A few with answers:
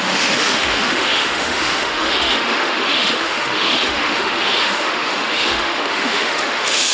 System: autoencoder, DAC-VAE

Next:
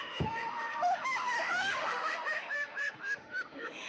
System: autoencoder, DAC-VAE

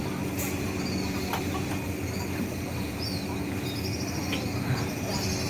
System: none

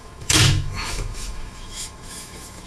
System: autoencoder, DAC-VAE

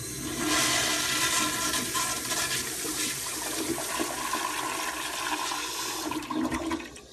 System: none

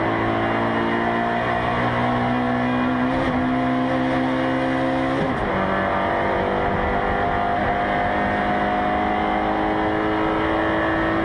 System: none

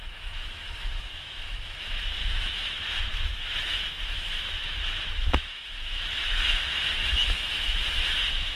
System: autoencoder, DAC-VAE